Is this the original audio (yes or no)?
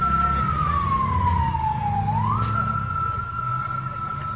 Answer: yes